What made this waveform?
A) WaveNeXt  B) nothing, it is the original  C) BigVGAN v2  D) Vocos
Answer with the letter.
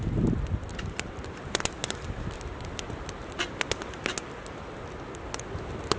B